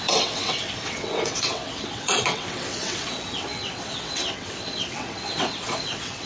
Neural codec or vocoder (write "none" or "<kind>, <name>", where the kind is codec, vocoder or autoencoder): vocoder, WaveNeXt